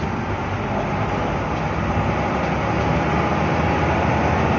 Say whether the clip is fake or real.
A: real